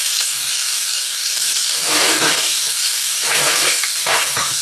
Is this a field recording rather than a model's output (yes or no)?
no